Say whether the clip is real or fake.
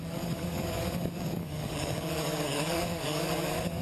fake